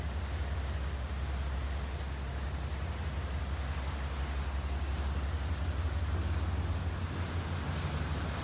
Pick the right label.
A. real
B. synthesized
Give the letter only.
A